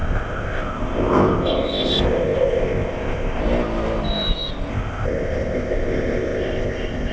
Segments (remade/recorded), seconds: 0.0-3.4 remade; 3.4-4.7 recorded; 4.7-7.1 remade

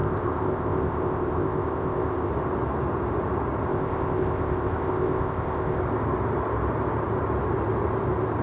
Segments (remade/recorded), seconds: 0.0-2.3 remade; 2.3-3.7 recorded; 3.7-5.8 remade; 5.8-8.4 recorded

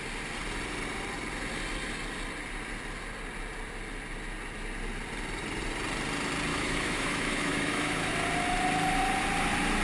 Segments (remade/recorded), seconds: 0.0-6.5 recorded; 6.5-8.1 remade; 8.1-9.8 recorded

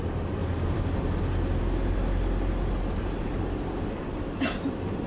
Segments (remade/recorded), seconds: 0.0-5.1 recorded

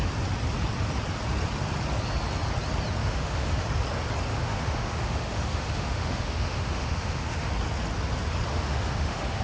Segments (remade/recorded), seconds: 0.0-3.0 recorded; 3.0-3.7 remade; 3.7-4.3 recorded; 4.3-7.5 remade; 7.5-8.5 recorded; 8.5-9.4 remade

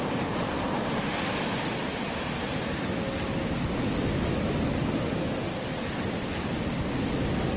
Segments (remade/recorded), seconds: 0.0-7.6 recorded